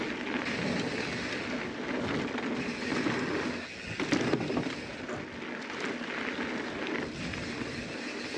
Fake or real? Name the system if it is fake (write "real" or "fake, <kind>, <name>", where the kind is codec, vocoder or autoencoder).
real